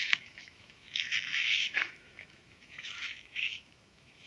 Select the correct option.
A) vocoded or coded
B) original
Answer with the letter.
A